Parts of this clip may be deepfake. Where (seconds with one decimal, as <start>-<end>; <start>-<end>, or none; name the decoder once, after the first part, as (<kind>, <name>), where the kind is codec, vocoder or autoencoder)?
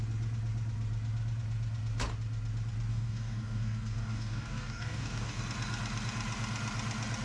2.9-5.4 (codec, DAC)